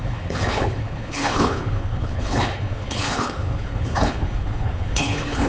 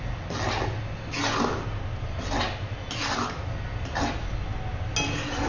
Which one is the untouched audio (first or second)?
second